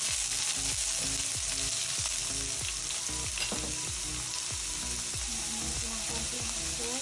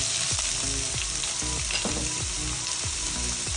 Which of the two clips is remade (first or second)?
second